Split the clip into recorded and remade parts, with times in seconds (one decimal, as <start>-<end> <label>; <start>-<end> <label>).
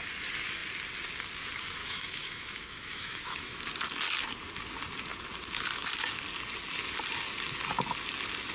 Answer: 0.0-1.8 recorded; 1.8-3.6 remade; 3.6-8.5 recorded